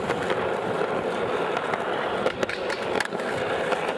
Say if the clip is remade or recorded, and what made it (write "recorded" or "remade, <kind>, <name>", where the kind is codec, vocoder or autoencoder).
recorded